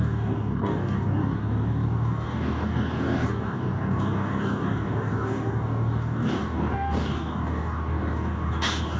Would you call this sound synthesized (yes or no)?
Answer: yes